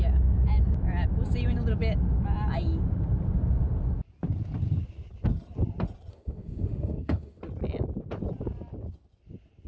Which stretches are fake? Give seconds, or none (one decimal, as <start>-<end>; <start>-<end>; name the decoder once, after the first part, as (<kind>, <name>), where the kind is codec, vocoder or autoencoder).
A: 6.1-7.4 (autoencoder, DAC-VAE)